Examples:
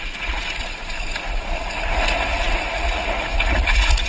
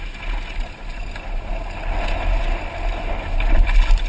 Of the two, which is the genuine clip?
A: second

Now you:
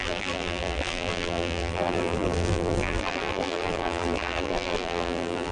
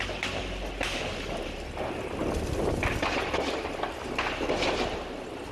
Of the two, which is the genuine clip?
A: second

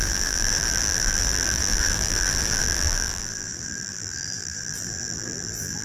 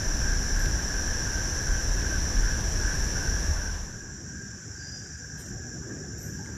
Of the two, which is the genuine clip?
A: second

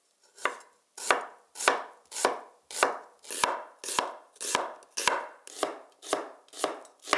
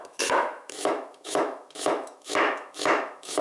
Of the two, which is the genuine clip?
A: first